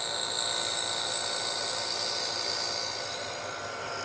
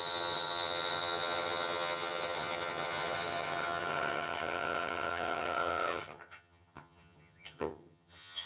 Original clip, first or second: first